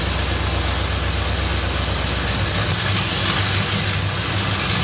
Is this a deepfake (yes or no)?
no